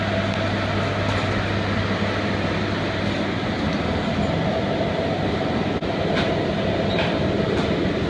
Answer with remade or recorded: recorded